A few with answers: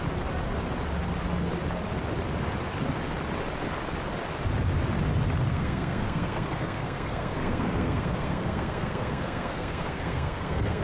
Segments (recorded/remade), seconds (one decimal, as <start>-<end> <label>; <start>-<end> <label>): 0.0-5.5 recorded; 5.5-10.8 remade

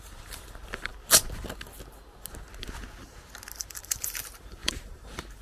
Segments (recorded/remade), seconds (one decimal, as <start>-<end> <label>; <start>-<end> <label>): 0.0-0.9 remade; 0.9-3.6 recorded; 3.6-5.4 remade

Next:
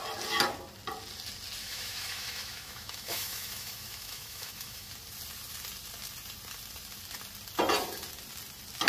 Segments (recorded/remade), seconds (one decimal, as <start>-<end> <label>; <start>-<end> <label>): 0.0-1.6 recorded; 1.6-4.9 remade; 4.9-8.9 recorded